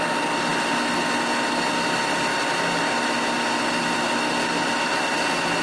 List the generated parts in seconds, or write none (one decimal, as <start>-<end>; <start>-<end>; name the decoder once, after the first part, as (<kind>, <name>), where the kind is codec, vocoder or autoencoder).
none